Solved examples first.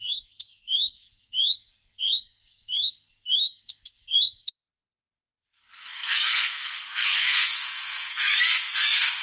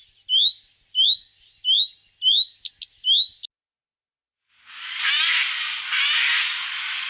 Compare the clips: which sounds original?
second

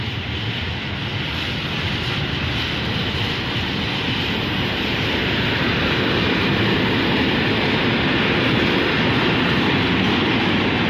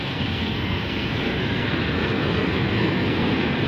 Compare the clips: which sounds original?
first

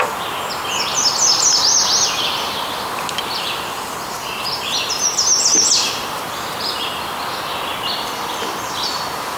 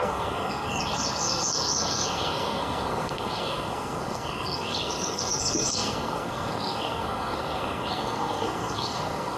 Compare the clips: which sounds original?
first